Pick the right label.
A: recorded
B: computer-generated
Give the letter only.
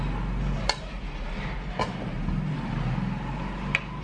A